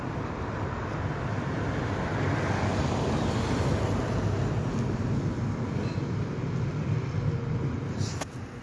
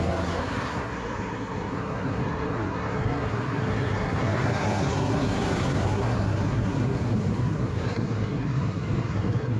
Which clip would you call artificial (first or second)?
second